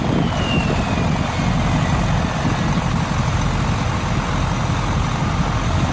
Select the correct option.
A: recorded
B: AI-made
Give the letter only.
A